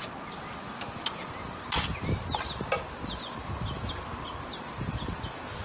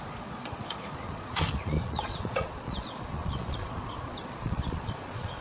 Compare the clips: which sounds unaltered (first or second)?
first